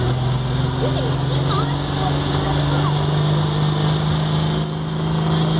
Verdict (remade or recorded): recorded